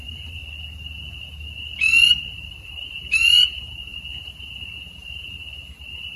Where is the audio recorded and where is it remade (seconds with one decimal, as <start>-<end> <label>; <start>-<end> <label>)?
0.0-0.4 remade; 0.4-2.5 recorded; 2.5-6.2 remade